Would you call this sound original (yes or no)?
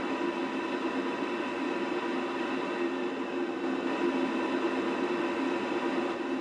yes